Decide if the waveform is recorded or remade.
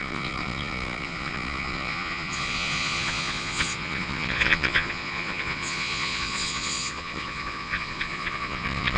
remade